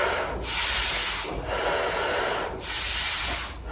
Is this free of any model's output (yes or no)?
yes